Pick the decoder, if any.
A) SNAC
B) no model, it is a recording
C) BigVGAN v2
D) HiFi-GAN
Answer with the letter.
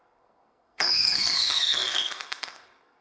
A